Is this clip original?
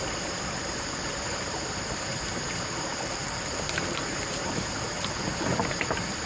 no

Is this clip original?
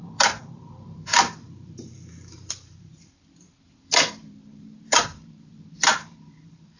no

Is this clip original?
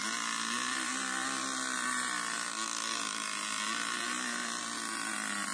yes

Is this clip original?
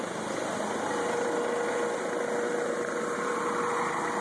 yes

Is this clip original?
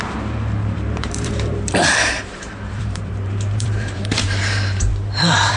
no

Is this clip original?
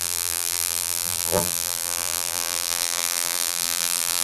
no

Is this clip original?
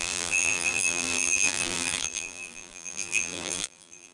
no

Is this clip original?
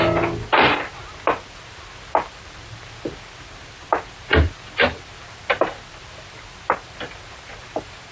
yes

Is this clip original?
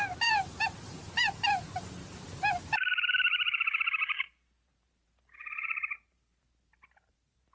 no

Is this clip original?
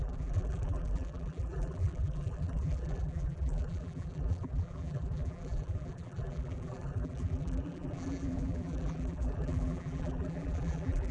no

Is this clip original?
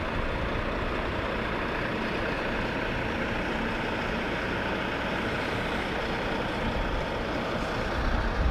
yes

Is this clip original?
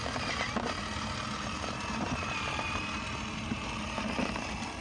yes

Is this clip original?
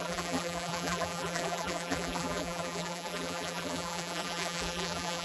no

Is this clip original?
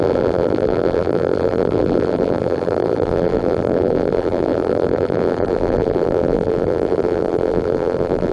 no